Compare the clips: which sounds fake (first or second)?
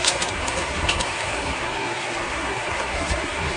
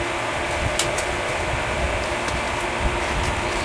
first